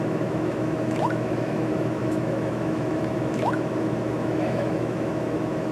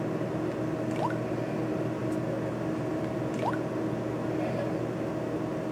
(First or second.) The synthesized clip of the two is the first